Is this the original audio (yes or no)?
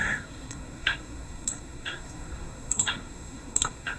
no